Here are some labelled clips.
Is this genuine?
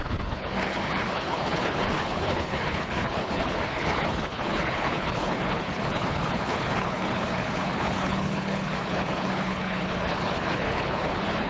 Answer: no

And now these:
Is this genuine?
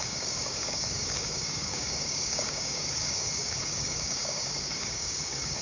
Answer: no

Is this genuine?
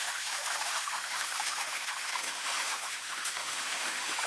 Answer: no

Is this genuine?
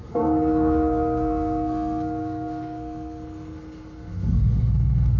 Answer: no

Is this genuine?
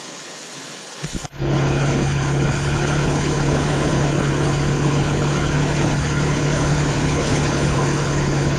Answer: no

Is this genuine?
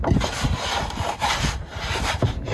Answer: no